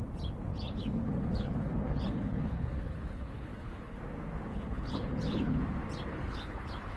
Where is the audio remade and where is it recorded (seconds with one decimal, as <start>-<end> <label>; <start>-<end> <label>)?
0.0-0.5 recorded; 0.5-4.0 remade; 4.0-4.5 recorded; 4.5-5.6 remade; 5.6-6.1 recorded; 6.1-7.0 remade

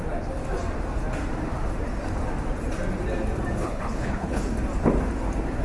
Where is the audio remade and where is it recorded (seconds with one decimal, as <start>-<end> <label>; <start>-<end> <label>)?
0.0-3.6 recorded; 3.6-4.4 remade; 4.4-5.6 recorded